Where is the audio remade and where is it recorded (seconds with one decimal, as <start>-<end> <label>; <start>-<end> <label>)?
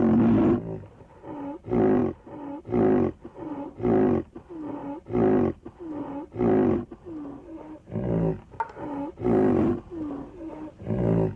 0.0-11.4 recorded